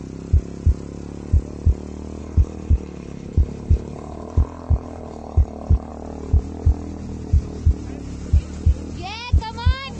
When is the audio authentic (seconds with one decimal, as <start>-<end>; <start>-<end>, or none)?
0.0-2.2; 5.9-10.0